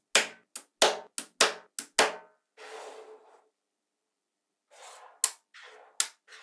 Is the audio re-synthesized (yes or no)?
no